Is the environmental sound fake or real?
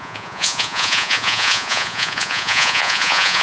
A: fake